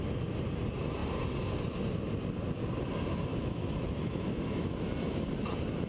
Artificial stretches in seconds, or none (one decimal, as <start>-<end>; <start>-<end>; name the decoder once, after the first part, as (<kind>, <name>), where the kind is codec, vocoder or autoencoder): 3.3-4.9 (autoencoder, DAC-VAE)